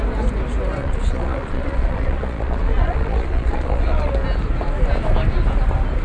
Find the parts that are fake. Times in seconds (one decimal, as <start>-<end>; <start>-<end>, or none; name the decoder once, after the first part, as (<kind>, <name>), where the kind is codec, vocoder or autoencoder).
0.8-4.1 (vocoder, Vocos)